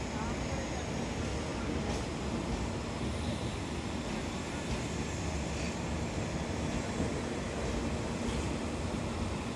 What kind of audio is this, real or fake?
real